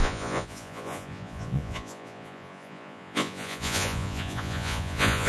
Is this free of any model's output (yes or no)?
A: no